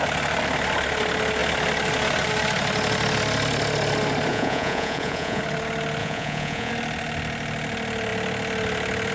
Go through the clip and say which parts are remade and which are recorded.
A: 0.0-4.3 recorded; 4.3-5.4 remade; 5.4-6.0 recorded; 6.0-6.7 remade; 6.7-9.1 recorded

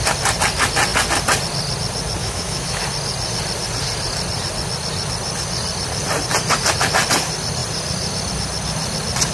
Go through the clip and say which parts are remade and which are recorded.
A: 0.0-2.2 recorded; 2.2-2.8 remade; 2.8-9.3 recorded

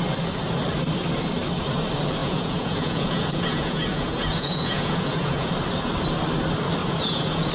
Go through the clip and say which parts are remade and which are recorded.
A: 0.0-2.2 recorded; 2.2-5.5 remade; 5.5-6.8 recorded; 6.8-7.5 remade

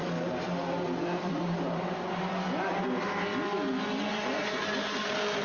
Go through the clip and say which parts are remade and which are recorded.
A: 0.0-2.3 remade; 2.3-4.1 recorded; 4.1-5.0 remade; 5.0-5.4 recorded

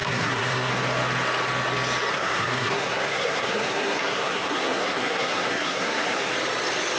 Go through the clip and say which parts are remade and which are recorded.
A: 0.0-0.7 remade; 0.7-2.1 recorded; 2.1-6.3 remade; 6.3-7.0 recorded

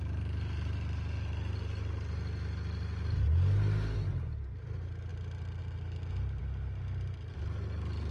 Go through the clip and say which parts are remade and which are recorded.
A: 0.0-8.1 recorded

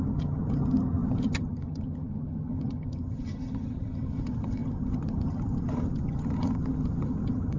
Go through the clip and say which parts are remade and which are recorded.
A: 0.0-7.6 remade

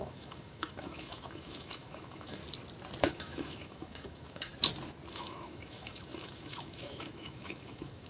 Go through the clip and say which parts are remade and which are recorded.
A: 0.0-2.4 remade; 2.4-3.0 recorded; 3.0-4.5 remade; 4.5-5.1 recorded; 5.1-8.1 remade